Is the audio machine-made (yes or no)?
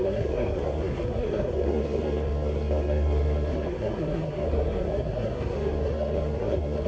yes